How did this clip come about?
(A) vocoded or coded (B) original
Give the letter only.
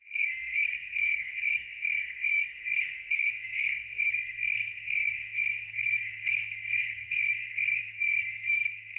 A